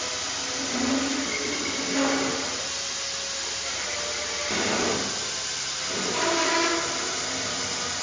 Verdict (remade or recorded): recorded